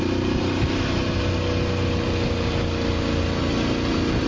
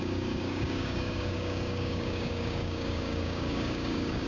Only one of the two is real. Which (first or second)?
first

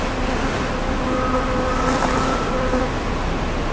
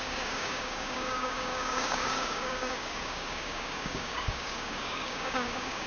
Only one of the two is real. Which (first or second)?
first